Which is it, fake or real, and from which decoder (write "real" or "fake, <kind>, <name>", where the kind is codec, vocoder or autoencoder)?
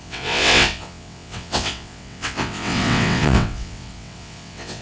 fake, vocoder, WaveNeXt